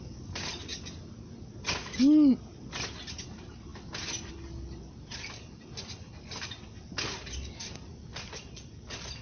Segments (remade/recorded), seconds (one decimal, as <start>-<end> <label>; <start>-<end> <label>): 0.0-9.2 recorded